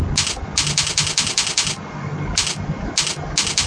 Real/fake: real